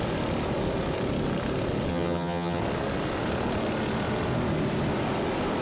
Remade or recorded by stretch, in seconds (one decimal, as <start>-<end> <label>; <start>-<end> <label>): 0.0-1.9 recorded; 1.9-2.6 remade; 2.6-5.6 recorded